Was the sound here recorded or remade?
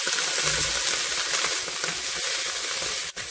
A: recorded